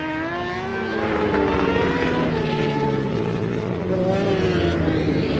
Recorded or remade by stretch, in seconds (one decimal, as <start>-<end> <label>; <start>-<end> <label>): 0.0-3.1 recorded; 3.1-3.9 remade; 3.9-5.4 recorded